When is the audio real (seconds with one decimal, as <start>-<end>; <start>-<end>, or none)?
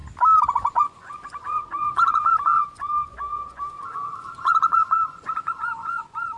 0.0-0.7